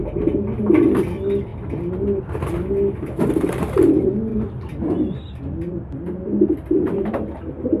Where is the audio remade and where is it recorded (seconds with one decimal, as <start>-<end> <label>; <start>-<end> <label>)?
0.0-7.8 recorded

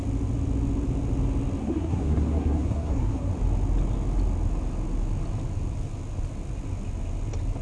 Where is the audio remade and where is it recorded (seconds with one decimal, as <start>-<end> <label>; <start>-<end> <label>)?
0.0-1.6 recorded; 1.6-3.3 remade; 3.3-7.6 recorded

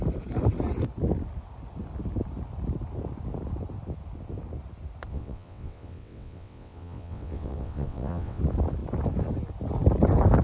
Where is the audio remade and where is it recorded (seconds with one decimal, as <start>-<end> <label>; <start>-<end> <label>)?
0.0-5.1 recorded; 5.1-8.4 remade; 8.4-10.4 recorded

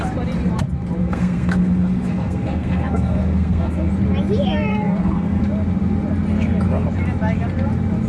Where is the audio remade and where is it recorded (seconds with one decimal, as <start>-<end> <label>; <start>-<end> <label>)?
0.0-1.0 recorded; 1.0-3.9 remade; 3.9-4.7 recorded; 4.7-5.4 remade; 5.4-8.1 recorded

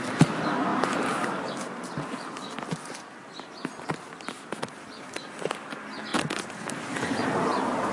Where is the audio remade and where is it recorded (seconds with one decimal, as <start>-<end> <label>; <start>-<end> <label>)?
0.0-7.9 recorded

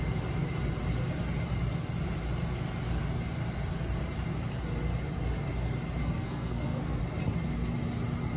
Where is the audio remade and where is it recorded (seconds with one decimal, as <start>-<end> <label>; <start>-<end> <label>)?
0.0-6.0 recorded; 6.0-7.0 remade; 7.0-8.4 recorded

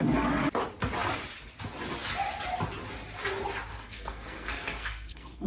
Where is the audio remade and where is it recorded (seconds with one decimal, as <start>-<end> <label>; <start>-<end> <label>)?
0.0-3.7 recorded; 3.7-5.5 remade